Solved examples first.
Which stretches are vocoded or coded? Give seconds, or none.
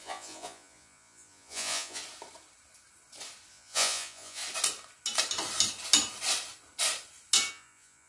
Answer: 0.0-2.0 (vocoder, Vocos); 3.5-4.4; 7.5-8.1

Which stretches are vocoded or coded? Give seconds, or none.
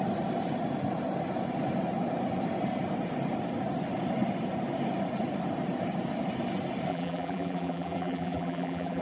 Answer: 6.9-9.0 (vocoder, BigVGAN v2)